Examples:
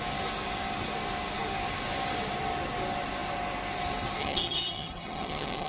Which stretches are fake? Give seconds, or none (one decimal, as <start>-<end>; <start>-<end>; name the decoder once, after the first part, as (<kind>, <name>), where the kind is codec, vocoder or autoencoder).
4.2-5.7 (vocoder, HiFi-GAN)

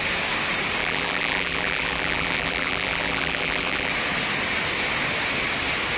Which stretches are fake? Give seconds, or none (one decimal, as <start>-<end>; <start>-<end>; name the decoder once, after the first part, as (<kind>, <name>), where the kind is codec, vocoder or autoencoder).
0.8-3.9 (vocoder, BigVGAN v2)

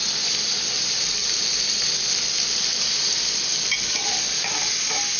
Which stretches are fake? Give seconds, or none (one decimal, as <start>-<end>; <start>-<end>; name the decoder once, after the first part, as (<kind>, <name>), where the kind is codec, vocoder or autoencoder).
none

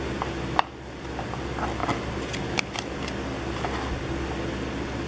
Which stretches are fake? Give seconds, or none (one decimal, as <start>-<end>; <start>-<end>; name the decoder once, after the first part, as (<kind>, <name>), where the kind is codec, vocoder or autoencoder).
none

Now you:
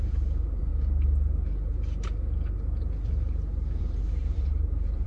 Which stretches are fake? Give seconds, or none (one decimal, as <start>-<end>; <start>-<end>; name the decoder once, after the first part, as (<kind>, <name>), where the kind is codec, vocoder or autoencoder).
0.0-0.7 (vocoder, BigVGAN v2); 3.8-5.1

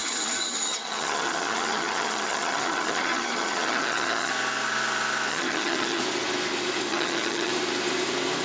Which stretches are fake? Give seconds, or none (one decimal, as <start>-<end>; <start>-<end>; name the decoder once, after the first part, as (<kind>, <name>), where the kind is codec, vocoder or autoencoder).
0.0-4.3 (vocoder, HiFi-GAN); 5.3-6.0; 6.9-7.5